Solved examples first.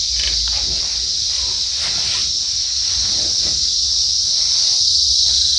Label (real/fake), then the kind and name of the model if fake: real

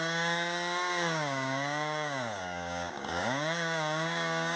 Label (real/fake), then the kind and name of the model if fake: fake, codec, DAC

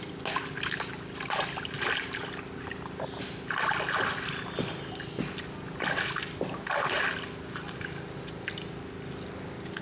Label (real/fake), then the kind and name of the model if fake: real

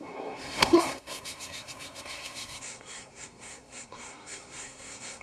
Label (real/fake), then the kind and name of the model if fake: fake, codec, SNAC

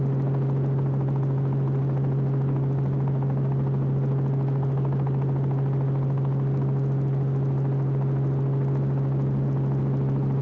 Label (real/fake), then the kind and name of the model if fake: real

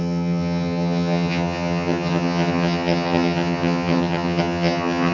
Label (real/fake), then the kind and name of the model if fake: fake, vocoder, HiFi-GAN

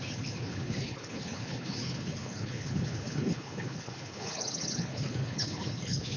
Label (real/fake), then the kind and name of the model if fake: fake, codec, HILCodec